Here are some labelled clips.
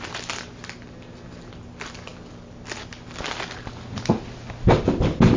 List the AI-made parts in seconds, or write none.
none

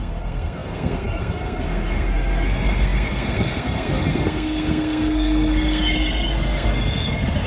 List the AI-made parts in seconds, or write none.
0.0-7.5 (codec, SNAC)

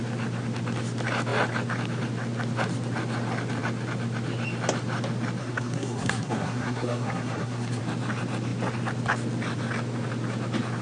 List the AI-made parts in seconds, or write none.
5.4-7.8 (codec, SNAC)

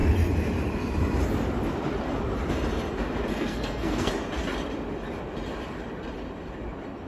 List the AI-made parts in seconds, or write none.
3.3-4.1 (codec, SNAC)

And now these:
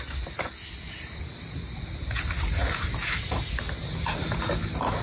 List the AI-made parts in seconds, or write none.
none

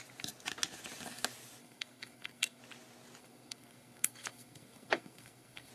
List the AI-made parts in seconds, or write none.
1.6-2.6 (codec, SNAC); 3.2-5.7